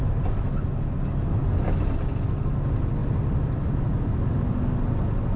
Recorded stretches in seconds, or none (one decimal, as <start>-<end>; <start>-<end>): 0.0-5.4